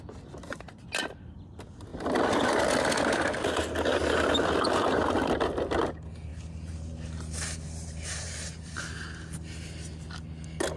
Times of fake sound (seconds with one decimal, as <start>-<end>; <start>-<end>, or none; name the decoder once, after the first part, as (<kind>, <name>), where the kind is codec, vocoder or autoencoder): 3.9-5.0 (vocoder, BigVGAN v2); 6.3-8.8